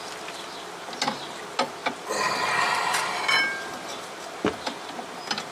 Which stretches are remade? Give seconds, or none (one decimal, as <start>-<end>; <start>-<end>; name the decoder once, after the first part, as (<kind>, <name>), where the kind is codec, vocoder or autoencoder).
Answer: none